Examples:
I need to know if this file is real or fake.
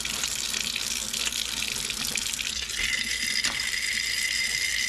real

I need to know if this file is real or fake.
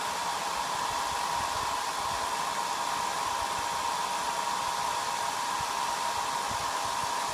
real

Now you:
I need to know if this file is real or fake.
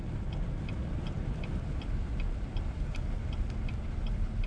real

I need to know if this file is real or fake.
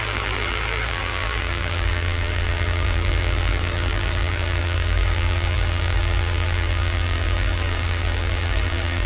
fake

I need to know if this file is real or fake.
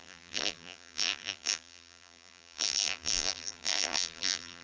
fake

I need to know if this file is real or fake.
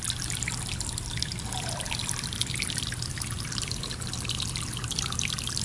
real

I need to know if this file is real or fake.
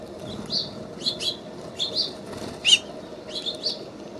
real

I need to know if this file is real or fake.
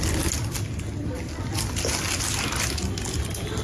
real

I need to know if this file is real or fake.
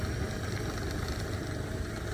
real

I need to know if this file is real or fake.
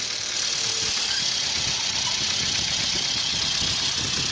real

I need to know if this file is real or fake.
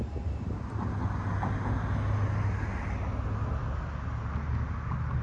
real